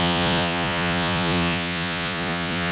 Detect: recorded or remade remade